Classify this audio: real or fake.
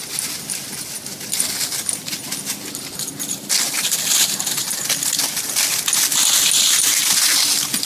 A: real